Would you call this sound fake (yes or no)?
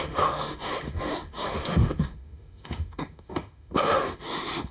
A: yes